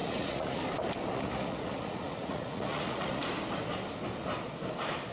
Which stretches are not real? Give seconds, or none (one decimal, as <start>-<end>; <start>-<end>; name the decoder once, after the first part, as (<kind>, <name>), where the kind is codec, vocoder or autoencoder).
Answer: 0.0-0.6 (vocoder, Vocos); 1.1-3.2